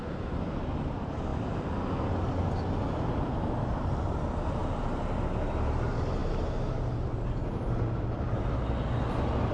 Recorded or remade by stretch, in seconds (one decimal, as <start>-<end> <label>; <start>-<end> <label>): 0.0-9.5 recorded